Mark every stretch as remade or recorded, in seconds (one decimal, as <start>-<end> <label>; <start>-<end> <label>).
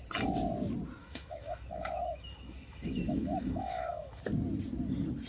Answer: 0.0-1.0 recorded; 1.0-4.2 remade; 4.2-5.3 recorded